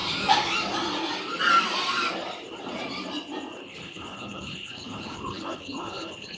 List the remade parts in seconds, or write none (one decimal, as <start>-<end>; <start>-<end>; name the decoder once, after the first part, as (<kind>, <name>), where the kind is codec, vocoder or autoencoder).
3.6-6.4 (codec, HILCodec)